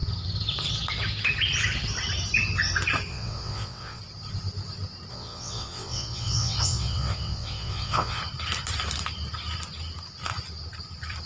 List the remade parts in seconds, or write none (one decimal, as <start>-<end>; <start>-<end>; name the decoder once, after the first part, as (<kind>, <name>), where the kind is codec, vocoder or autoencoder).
3.1-4.0 (vocoder, WaveNeXt); 5.1-8.2

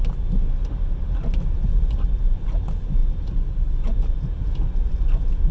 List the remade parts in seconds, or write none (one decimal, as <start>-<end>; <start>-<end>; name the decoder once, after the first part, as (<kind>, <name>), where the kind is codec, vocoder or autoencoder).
none